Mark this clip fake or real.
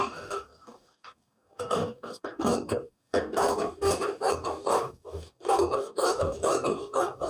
fake